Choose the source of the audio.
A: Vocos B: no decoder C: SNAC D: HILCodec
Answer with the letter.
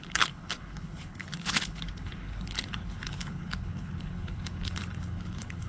D